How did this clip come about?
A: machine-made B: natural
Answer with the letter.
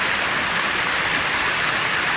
B